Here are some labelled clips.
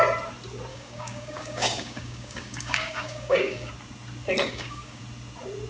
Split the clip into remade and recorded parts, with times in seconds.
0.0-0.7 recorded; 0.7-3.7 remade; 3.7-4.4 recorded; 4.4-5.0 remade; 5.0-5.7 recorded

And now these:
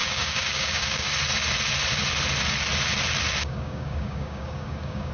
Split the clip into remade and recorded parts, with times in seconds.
0.0-1.1 remade; 1.1-3.4 recorded; 3.4-5.1 remade

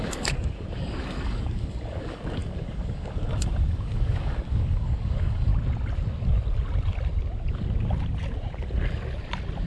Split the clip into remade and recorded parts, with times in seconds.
0.0-5.5 remade; 5.5-9.7 recorded

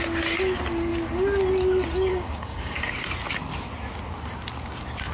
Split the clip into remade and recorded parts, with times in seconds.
0.0-2.1 recorded; 2.1-2.9 remade; 2.9-5.1 recorded

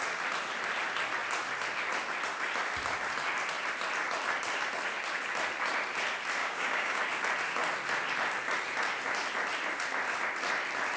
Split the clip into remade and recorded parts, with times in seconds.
0.0-6.4 recorded; 6.4-7.0 remade; 7.0-11.0 recorded

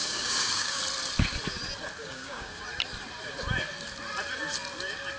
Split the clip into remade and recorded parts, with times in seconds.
0.0-0.8 remade; 0.8-2.0 recorded; 2.0-2.6 remade; 2.6-5.2 recorded